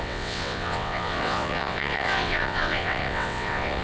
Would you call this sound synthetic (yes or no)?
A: yes